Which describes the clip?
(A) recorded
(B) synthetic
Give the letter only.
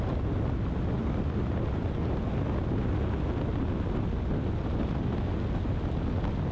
A